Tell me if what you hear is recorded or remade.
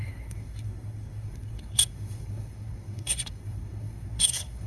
remade